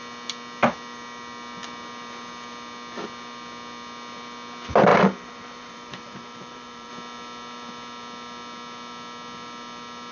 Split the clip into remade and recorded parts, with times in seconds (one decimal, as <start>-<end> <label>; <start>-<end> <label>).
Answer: 0.0-4.9 recorded; 4.9-6.9 remade; 6.9-10.1 recorded